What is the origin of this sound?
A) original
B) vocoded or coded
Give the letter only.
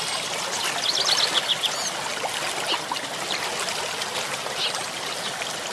A